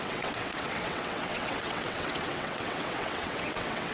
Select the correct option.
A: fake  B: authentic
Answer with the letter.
A